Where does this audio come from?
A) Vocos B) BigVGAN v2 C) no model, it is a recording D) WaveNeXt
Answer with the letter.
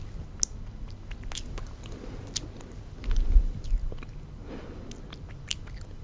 C